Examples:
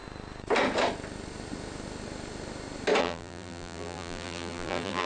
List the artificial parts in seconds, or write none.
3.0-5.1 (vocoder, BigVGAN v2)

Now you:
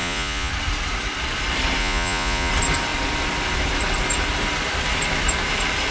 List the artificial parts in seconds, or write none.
0.0-0.5 (vocoder, Vocos); 1.8-2.5

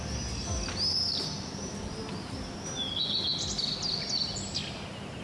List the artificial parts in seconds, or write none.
none

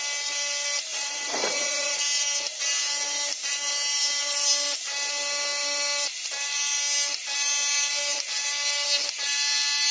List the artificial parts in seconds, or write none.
0.9-2.0 (vocoder, Vocos)

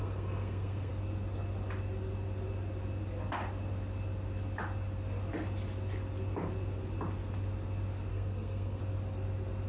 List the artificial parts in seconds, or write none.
0.0-0.9 (codec, SNAC); 8.1-8.8

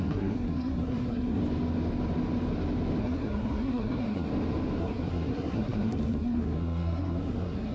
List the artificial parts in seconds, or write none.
0.0-1.4 (codec, SNAC); 3.0-4.3; 4.8-7.7